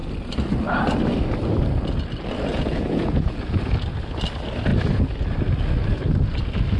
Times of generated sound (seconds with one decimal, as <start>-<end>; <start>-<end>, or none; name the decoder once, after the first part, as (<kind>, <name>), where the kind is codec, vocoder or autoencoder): 2.5-3.8 (vocoder, Vocos)